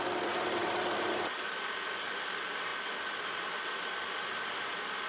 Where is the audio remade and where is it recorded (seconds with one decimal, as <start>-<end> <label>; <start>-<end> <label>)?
0.0-5.1 recorded